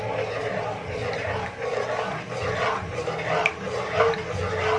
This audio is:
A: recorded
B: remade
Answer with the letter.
A